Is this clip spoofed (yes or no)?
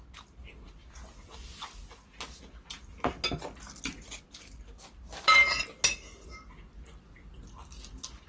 no